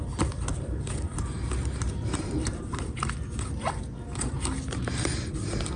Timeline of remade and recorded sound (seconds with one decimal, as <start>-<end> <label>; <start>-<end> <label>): 0.0-0.5 recorded; 0.5-2.8 remade; 2.8-5.8 recorded